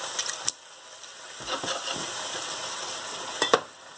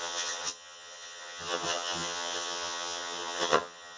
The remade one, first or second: second